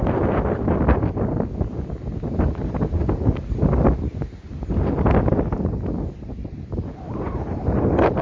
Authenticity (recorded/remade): recorded